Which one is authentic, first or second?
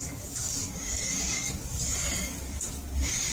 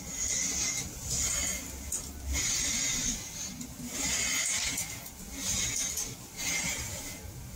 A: second